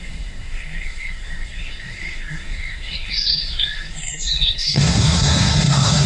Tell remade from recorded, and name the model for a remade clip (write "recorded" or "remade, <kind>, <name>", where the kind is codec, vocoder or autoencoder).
remade, codec, SNAC